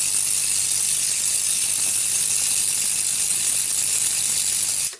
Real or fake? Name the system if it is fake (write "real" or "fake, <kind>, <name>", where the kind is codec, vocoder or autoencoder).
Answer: real